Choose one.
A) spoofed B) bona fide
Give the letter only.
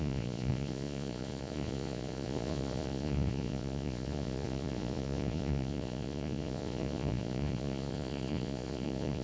A